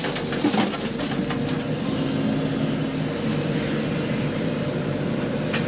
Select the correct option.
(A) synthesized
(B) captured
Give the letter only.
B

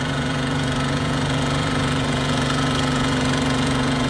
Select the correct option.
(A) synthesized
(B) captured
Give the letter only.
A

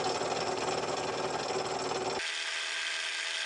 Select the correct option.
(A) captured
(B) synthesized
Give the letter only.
A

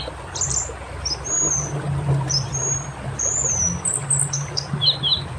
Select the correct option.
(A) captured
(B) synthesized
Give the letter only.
A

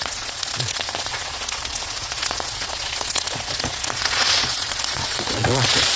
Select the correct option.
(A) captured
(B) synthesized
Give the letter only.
B